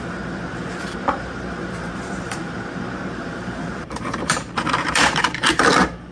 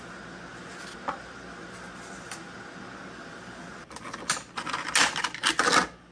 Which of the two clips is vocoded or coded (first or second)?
first